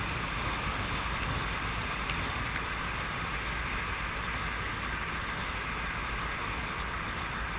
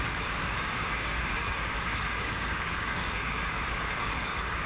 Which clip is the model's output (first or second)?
second